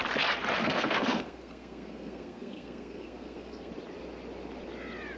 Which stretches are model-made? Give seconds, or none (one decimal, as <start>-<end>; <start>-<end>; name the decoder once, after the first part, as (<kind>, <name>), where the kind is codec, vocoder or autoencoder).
0.6-3.7 (codec, SNAC)